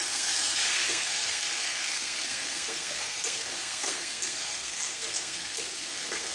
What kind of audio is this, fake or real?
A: fake